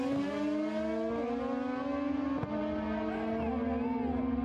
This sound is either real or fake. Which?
real